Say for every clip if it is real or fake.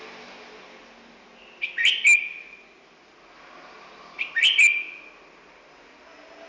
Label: real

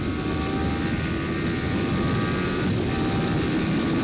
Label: real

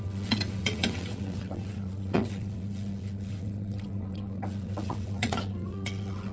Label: fake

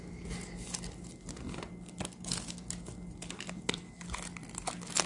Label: real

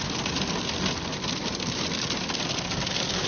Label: real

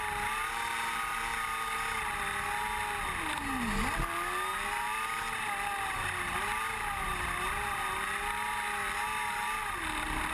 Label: real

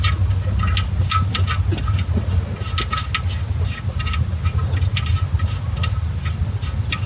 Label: real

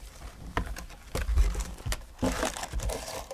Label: fake